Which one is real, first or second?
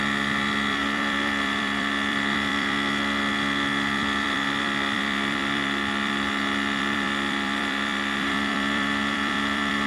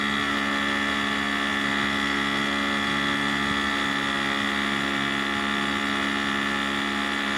second